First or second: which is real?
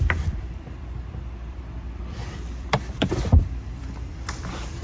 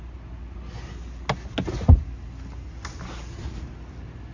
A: second